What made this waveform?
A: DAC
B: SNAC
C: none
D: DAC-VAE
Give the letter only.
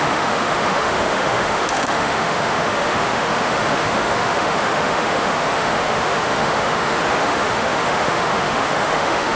D